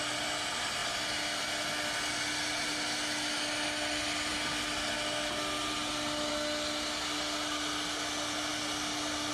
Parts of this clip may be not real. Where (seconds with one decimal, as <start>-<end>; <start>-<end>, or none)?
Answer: none